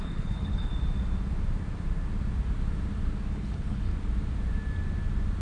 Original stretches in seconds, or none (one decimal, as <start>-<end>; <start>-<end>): 0.7-3.3; 3.9-5.4